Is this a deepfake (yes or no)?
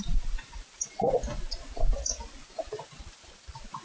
no